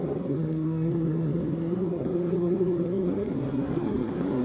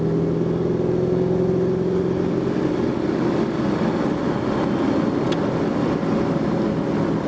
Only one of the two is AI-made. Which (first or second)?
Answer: first